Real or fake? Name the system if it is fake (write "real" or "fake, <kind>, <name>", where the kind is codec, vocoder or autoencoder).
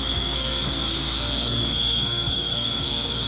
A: fake, codec, SNAC